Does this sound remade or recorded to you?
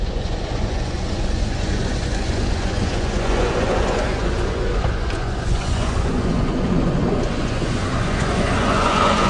remade